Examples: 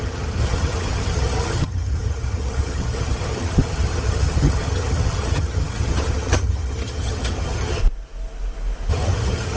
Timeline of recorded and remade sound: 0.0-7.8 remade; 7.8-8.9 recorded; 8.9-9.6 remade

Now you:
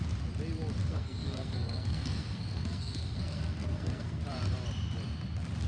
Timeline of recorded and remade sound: 0.0-0.8 recorded; 0.8-4.2 remade; 4.2-5.7 recorded

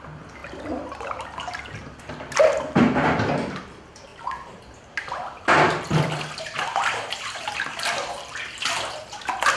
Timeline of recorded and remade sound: 0.0-9.6 recorded

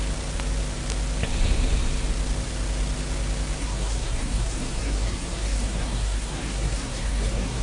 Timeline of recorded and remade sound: 0.0-3.6 recorded; 3.6-7.6 remade

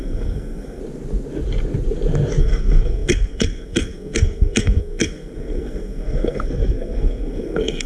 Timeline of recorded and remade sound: 0.0-0.8 remade; 0.8-2.4 recorded; 2.4-7.9 remade

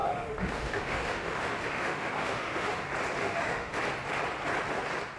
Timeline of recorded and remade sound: 0.0-2.8 remade; 2.8-3.2 recorded; 3.2-3.8 remade; 3.8-5.2 recorded

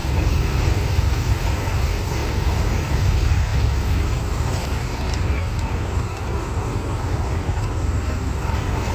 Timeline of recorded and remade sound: 0.0-8.9 remade

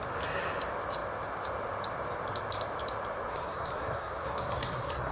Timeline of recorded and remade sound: 0.0-3.3 recorded; 3.3-5.1 remade